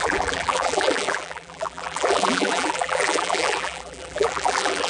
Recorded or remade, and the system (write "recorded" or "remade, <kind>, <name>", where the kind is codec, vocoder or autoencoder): remade, vocoder, BigVGAN v2